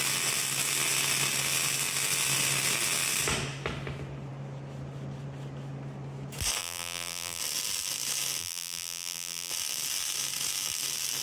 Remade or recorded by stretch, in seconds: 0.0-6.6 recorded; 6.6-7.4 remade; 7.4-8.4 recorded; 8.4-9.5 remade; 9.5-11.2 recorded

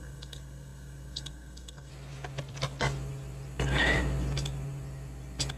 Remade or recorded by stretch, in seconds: 0.0-1.9 remade; 1.9-5.6 recorded